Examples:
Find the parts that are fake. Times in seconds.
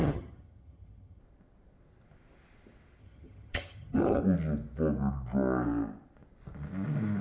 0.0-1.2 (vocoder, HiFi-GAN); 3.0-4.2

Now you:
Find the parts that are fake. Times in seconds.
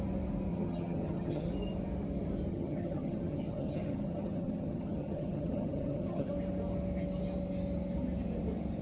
0.5-1.5 (vocoder, HiFi-GAN); 2.5-6.3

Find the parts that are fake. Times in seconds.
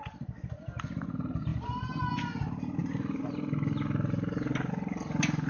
none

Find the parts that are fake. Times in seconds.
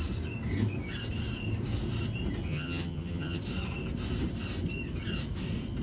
2.5-3.4 (vocoder, HiFi-GAN)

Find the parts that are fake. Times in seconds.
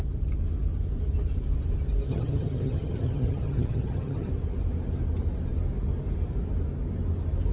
2.1-4.3 (vocoder, HiFi-GAN)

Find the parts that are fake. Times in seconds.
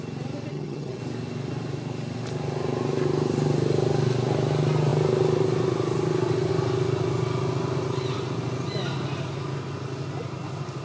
0.5-1.0 (vocoder, HiFi-GAN)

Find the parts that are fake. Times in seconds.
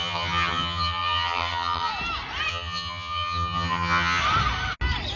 0.0-1.9 (vocoder, HiFi-GAN); 2.5-4.2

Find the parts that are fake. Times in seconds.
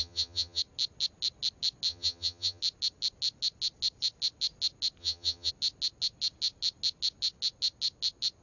0.0-0.6 (vocoder, HiFi-GAN); 1.9-2.6; 5.0-5.5